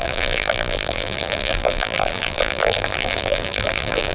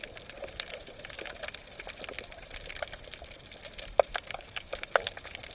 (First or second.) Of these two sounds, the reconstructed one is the first